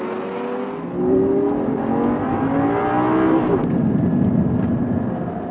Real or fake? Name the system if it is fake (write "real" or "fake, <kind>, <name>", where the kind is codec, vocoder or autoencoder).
real